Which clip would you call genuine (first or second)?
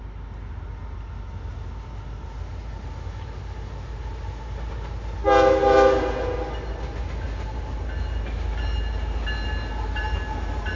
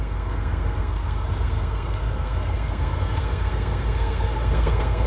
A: first